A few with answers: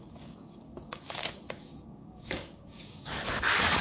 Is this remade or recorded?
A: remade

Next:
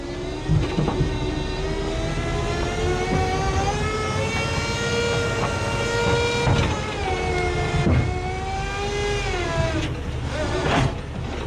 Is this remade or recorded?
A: recorded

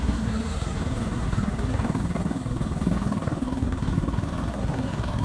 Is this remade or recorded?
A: remade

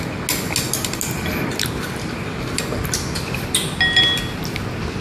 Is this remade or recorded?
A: recorded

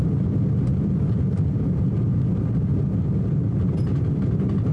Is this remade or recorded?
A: recorded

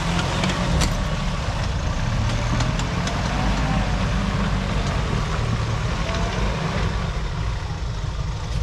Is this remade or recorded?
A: recorded